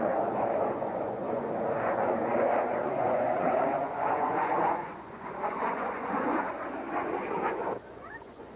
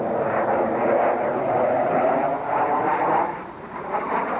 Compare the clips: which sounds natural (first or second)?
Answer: second